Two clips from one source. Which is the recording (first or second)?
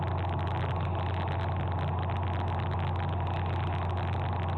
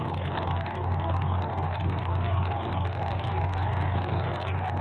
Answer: first